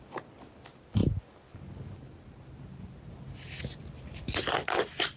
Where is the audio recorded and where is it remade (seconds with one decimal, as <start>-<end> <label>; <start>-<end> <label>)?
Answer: 0.0-5.2 recorded